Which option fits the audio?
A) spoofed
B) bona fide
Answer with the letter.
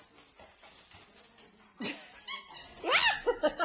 B